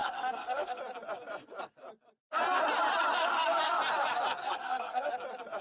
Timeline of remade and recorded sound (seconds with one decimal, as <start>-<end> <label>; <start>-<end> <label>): 0.0-0.8 remade; 0.8-3.3 recorded; 3.3-3.8 remade; 3.8-4.4 recorded; 4.4-5.1 remade; 5.1-5.6 recorded